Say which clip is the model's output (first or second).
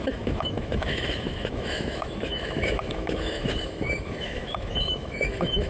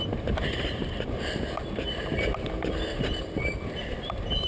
first